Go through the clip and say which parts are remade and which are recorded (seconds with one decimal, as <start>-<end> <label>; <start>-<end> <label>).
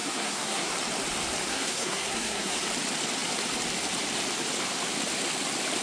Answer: 0.0-0.7 remade; 0.7-1.5 recorded; 1.5-2.6 remade; 2.6-5.8 recorded